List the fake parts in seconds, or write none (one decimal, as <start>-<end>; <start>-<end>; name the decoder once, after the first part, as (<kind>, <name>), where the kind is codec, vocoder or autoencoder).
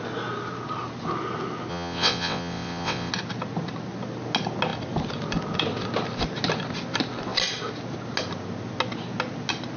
1.7-3.1 (vocoder, WaveNeXt)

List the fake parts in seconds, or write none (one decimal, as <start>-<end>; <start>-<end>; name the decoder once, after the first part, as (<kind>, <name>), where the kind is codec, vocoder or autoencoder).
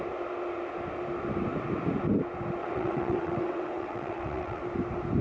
2.6-4.6 (vocoder, WaveNeXt)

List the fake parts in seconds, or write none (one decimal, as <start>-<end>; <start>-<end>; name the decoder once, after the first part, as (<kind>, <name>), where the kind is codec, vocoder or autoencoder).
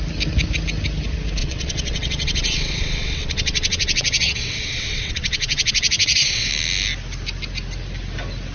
1.4-6.5 (vocoder, WaveNeXt)